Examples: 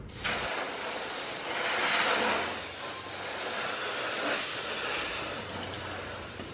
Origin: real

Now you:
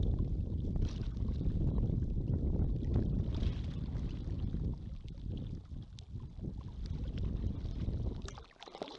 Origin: real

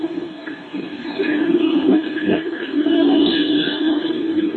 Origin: fake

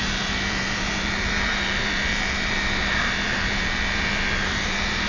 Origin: fake